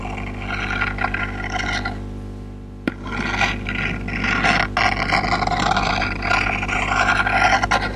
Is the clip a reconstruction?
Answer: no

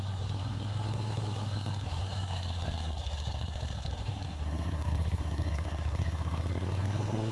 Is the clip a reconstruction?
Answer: yes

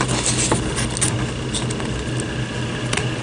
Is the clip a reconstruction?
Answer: no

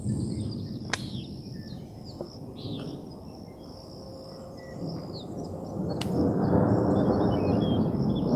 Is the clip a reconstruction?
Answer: no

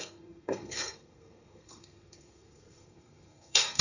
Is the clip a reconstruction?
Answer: yes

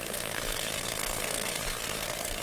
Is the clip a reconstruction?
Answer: yes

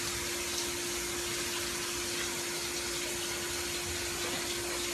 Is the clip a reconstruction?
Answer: no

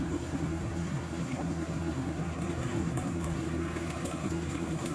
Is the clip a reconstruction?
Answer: yes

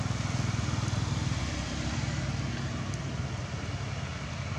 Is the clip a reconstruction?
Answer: no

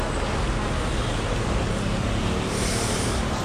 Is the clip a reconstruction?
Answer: no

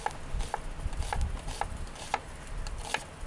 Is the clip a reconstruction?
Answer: no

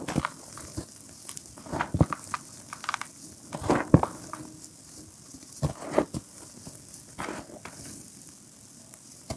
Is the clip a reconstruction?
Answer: no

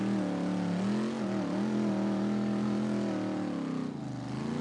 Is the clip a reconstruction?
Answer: no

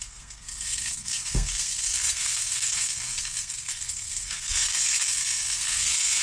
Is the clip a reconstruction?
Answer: yes